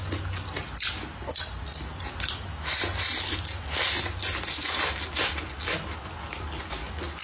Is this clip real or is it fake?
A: real